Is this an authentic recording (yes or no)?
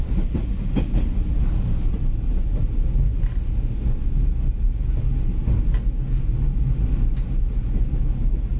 yes